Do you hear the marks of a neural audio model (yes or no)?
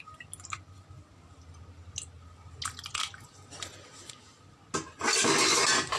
no